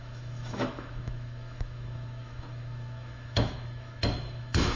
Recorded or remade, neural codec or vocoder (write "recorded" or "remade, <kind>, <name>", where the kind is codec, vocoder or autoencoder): remade, autoencoder, DAC-VAE